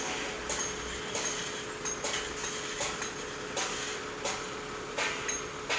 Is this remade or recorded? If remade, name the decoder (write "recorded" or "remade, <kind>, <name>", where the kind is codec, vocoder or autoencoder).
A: recorded